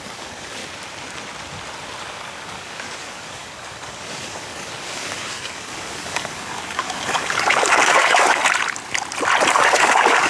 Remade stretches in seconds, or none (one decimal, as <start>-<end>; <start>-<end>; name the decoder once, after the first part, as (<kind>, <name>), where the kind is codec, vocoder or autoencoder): 0.0-0.6 (codec, DAC); 2.0-8.4; 9.5-10.3